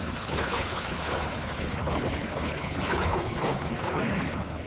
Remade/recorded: remade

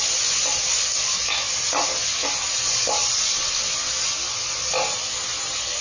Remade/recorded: recorded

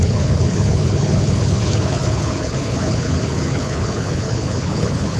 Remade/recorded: remade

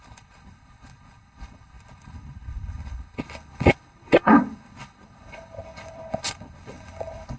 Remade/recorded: remade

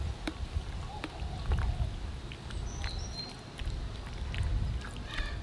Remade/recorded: recorded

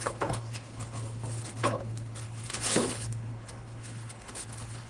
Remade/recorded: remade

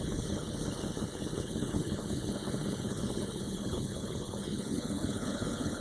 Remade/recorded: remade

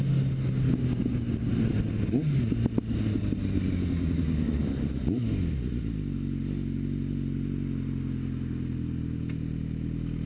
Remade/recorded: recorded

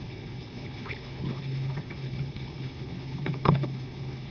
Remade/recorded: remade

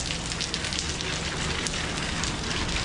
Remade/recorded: recorded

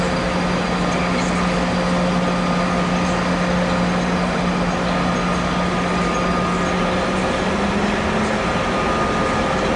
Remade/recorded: recorded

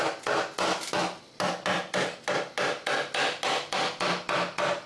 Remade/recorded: recorded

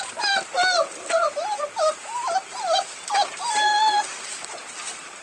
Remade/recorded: recorded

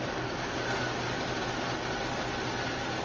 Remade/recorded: recorded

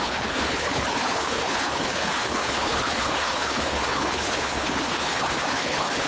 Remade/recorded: remade